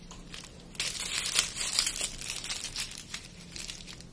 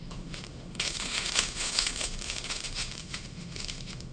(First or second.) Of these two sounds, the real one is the first